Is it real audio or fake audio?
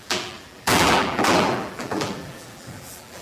fake